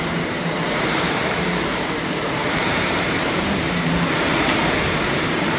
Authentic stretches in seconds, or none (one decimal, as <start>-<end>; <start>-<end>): none